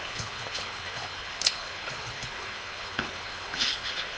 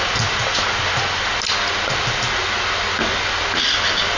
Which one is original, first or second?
second